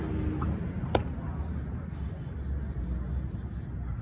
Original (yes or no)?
yes